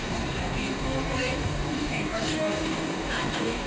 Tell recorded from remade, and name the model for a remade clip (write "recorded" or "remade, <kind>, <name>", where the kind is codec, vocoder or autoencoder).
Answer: remade, codec, DAC